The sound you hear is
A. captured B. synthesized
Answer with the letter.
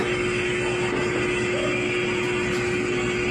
A